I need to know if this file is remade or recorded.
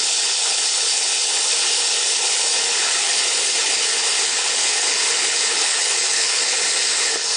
remade